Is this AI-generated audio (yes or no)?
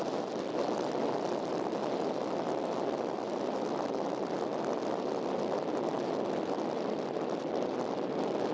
no